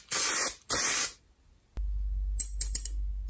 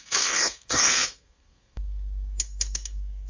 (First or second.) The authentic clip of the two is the first